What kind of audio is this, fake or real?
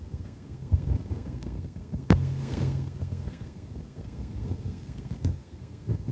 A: fake